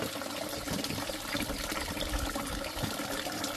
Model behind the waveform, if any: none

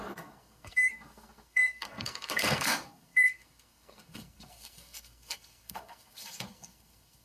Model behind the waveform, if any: codec, SNAC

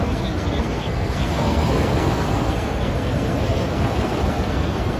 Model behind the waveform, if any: codec, SNAC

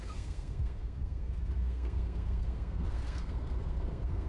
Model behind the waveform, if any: codec, SNAC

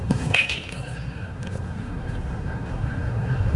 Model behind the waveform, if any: codec, SNAC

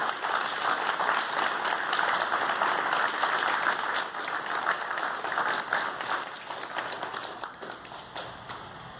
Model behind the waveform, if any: none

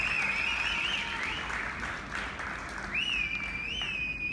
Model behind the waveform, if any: none